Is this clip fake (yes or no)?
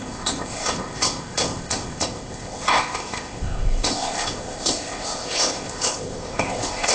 yes